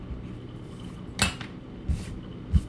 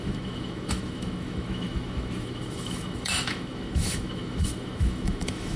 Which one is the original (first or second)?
first